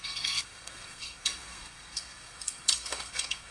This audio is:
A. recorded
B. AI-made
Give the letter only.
B